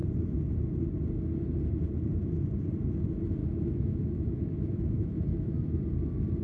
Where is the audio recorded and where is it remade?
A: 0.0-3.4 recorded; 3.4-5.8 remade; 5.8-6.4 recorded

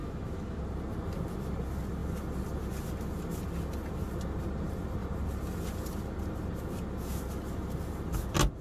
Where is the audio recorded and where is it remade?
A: 0.0-0.6 remade; 0.6-8.6 recorded

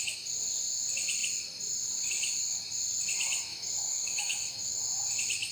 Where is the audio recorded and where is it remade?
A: 0.0-3.5 recorded; 3.5-4.8 remade; 4.8-5.5 recorded

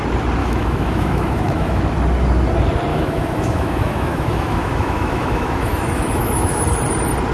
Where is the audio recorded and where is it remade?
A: 0.0-0.4 recorded; 0.4-1.8 remade; 1.8-2.9 recorded; 2.9-6.6 remade; 6.6-7.3 recorded

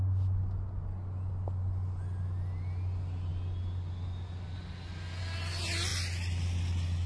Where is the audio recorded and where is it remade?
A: 0.0-7.1 recorded

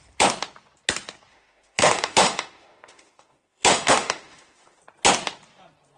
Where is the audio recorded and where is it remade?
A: 0.0-1.3 recorded; 1.3-4.8 remade; 4.8-6.0 recorded

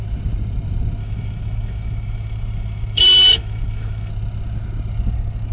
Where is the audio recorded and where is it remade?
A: 0.0-1.0 recorded; 1.0-4.1 remade; 4.1-5.5 recorded

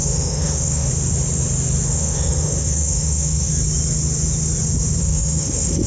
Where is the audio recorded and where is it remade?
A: 0.0-0.9 remade; 0.9-1.9 recorded; 1.9-3.5 remade; 3.5-5.0 recorded; 5.0-5.9 remade